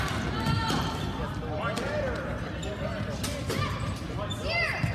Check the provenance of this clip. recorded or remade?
recorded